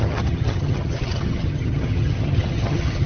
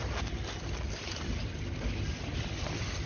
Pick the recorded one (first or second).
second